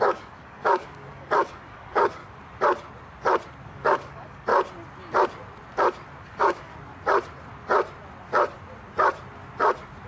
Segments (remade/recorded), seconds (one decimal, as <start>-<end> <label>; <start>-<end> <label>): 0.0-2.2 remade; 2.2-3.7 recorded; 3.7-4.5 remade; 4.5-6.2 recorded; 6.2-6.7 remade; 6.7-10.1 recorded